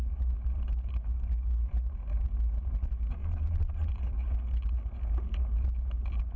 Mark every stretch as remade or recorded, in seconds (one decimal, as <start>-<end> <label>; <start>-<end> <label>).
0.0-3.2 recorded; 3.2-3.9 remade; 3.9-6.4 recorded